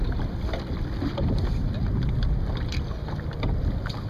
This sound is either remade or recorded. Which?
recorded